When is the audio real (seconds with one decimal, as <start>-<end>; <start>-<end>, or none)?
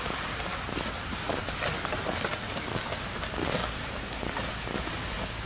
0.0-3.6; 4.4-5.5